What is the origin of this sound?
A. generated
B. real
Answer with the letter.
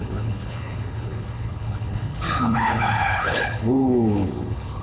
A